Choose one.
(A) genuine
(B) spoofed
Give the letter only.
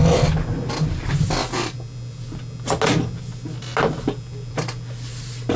A